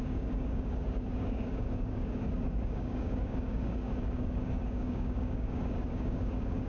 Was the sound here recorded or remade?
remade